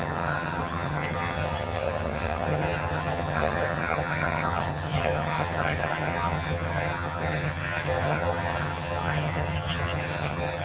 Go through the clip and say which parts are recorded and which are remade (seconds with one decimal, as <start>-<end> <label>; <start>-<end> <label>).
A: 0.0-10.6 remade

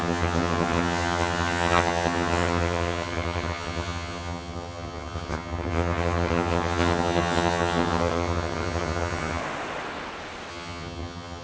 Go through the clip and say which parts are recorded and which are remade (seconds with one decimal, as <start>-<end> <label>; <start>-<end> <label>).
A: 0.0-9.4 remade; 9.4-10.5 recorded; 10.5-11.4 remade

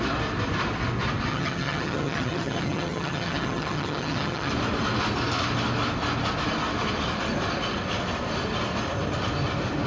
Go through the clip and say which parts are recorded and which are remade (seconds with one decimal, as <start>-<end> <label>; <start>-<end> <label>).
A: 0.0-1.3 recorded; 1.3-4.5 remade; 4.5-9.9 recorded

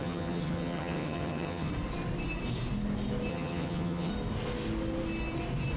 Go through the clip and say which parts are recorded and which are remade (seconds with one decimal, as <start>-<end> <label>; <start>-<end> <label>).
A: 0.0-1.7 remade; 1.7-3.3 recorded; 3.3-4.1 remade; 4.1-5.8 recorded

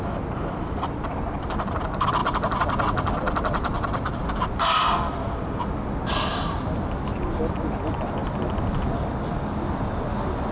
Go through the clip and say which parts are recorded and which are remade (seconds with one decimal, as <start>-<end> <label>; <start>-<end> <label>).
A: 0.0-10.5 recorded

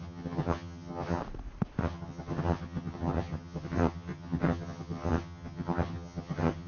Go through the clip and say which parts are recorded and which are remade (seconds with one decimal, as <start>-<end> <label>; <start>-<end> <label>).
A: 0.0-1.2 remade; 1.2-1.8 recorded; 1.8-6.7 remade